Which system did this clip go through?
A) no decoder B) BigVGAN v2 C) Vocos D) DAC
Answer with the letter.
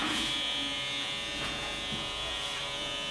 C